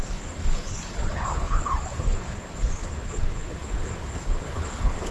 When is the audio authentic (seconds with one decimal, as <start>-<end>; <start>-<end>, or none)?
none